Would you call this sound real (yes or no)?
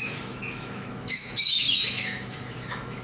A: no